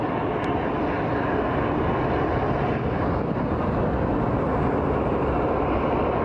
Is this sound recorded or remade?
recorded